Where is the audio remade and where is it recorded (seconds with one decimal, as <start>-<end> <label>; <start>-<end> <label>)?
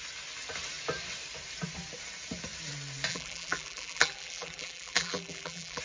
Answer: 0.0-3.1 recorded; 3.1-5.8 remade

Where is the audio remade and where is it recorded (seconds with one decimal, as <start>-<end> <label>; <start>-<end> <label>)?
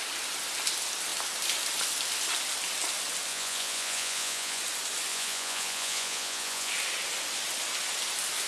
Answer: 0.0-3.3 recorded; 3.3-4.6 remade; 4.6-5.1 recorded; 5.1-6.7 remade; 6.7-8.5 recorded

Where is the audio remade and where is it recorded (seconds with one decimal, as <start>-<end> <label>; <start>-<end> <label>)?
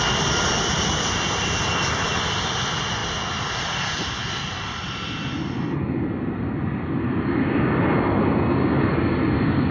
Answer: 0.0-9.7 recorded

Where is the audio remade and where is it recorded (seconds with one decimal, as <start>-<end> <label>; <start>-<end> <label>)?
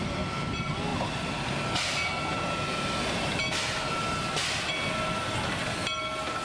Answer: 0.0-6.4 recorded